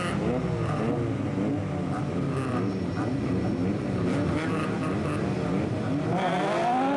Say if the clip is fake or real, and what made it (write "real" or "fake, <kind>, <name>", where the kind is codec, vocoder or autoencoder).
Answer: real